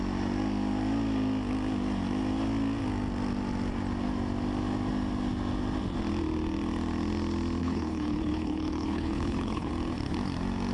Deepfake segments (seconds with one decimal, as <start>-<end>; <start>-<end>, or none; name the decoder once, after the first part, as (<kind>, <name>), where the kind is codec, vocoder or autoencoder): 7.6-9.7 (codec, HILCodec)

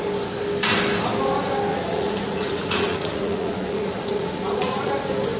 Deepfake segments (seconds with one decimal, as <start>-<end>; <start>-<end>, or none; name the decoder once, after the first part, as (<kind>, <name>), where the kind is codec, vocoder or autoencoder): 1.7-4.9 (vocoder, Vocos)

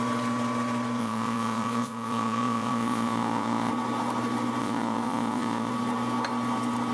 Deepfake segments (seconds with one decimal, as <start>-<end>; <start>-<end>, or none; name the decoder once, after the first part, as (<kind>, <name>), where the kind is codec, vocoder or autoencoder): 1.0-3.7 (vocoder, Vocos); 4.6-5.7

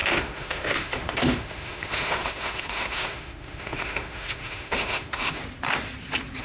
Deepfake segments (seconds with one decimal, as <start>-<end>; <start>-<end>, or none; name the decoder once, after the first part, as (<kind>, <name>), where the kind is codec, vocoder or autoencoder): 0.0-5.4 (autoencoder, DAC-VAE)

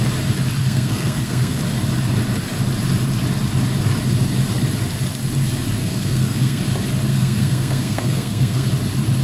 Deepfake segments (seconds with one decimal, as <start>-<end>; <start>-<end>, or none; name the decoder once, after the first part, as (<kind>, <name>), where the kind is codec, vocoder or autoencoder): 0.6-1.6 (codec, SNAC); 5.8-6.6; 7.1-8.7

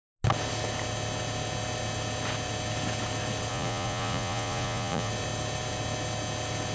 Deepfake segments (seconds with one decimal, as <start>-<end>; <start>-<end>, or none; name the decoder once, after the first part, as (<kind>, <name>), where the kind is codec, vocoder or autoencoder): 3.5-5.1 (vocoder, Vocos)

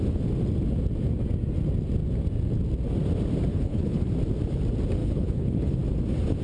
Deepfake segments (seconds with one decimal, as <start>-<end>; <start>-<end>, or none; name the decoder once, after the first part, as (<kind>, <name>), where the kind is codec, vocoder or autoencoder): 3.5-4.1 (codec, HILCodec); 5.0-5.8

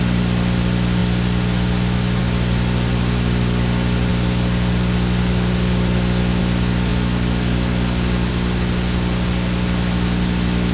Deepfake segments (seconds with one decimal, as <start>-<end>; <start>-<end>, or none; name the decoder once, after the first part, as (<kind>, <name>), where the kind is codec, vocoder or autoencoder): none